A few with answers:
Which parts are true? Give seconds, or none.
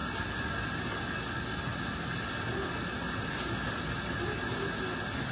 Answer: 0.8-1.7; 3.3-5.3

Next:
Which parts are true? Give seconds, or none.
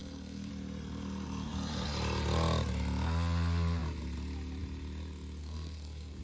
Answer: 0.5-5.4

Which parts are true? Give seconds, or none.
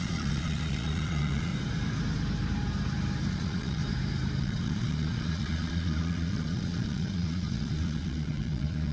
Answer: 1.5-3.3; 3.8-4.4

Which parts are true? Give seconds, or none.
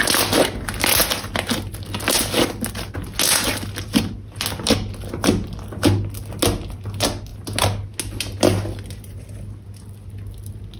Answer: 0.0-10.8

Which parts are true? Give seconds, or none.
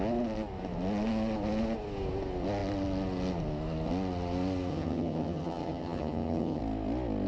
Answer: 0.0-4.7; 6.6-7.3